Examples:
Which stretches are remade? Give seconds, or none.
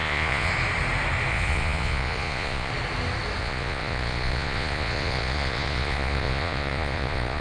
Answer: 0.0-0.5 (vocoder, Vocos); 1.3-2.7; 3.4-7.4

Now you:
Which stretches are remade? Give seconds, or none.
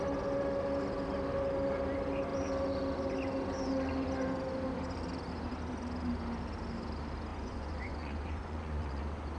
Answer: 7.3-9.0 (vocoder, Vocos)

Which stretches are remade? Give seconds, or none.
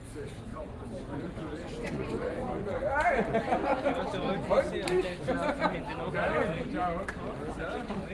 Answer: 0.5-2.8 (vocoder, Vocos)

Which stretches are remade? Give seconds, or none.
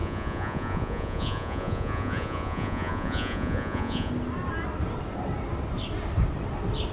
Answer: 0.0-4.1 (vocoder, Vocos)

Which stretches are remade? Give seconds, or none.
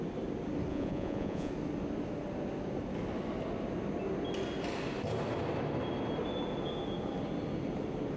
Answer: 0.7-1.5 (vocoder, Vocos)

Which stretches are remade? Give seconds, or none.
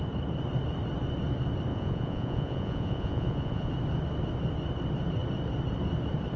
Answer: 1.7-3.7 (vocoder, Vocos)